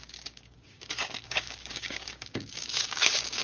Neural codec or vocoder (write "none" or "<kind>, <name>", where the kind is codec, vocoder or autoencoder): codec, DAC